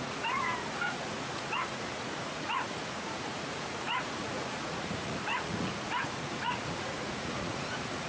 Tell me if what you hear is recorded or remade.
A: remade